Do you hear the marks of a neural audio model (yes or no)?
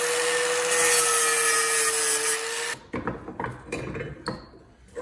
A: no